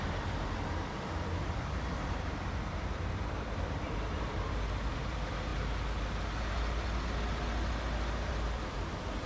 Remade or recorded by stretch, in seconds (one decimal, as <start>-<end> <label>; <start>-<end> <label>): 0.0-5.5 remade; 5.5-8.3 recorded; 8.3-9.3 remade